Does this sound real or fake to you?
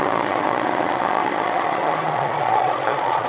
fake